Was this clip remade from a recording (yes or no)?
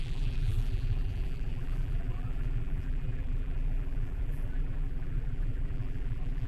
yes